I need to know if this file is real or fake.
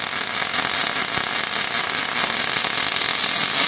real